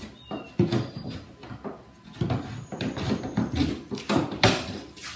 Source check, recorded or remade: recorded